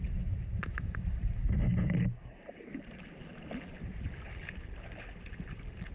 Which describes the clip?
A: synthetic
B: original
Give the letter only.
B